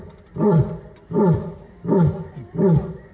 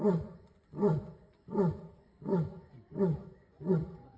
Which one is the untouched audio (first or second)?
first